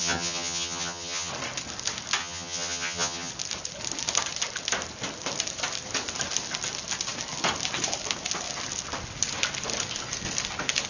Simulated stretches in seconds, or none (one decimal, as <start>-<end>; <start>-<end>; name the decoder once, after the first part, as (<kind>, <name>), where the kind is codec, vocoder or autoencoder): 0.0-1.3 (vocoder, HiFi-GAN); 2.2-3.3

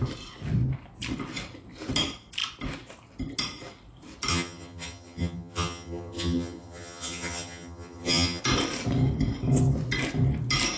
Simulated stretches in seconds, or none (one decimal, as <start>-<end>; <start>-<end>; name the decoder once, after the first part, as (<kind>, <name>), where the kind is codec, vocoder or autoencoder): 4.3-8.4 (vocoder, HiFi-GAN)

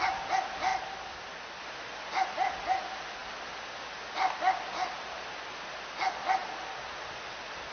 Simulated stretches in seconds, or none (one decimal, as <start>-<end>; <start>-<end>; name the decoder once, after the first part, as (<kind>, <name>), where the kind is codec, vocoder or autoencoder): none